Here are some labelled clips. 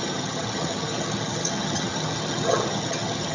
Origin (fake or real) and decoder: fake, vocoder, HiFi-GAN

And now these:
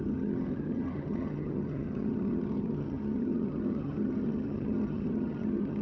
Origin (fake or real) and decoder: fake, vocoder, HiFi-GAN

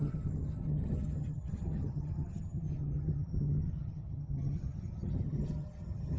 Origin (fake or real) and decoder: fake, vocoder, HiFi-GAN